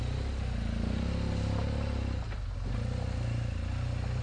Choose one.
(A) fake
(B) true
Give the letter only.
B